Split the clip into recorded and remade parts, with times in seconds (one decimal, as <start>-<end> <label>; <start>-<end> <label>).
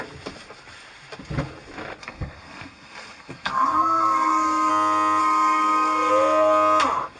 0.0-2.0 recorded; 2.0-4.7 remade; 4.7-5.2 recorded; 5.2-6.1 remade; 6.1-7.2 recorded